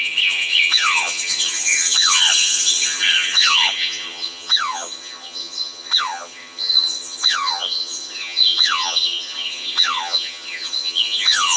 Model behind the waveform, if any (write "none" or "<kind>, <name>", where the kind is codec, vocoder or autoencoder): vocoder, HiFi-GAN